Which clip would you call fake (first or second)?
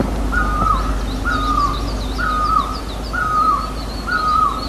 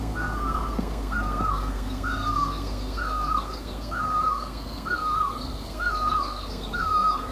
second